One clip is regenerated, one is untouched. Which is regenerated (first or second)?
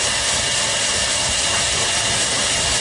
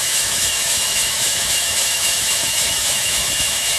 second